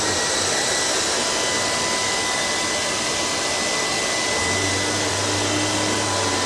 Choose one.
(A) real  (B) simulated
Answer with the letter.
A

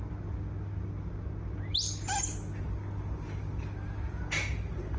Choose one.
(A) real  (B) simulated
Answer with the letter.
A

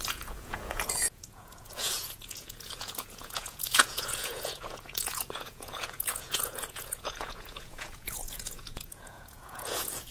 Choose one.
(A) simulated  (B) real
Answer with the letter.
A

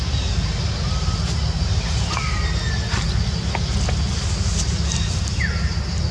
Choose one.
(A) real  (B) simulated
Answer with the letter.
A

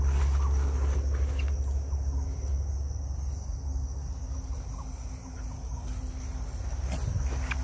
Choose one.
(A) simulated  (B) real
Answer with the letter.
B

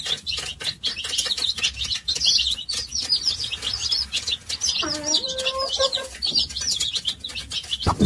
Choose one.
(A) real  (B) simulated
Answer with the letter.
A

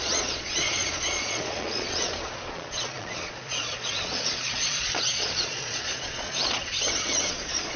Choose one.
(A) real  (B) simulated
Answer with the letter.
B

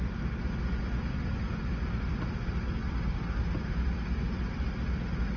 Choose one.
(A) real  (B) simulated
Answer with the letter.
A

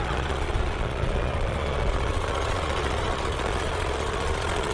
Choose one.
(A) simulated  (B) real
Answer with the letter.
A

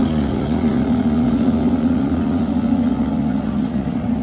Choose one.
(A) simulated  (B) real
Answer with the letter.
A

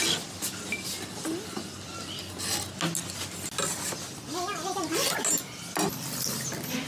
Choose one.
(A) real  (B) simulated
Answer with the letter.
A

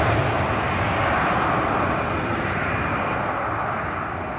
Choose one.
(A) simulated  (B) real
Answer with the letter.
B